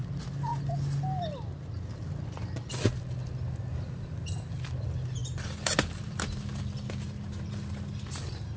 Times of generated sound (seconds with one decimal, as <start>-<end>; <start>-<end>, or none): none